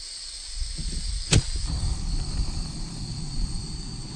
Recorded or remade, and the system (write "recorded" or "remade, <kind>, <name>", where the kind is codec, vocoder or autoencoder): recorded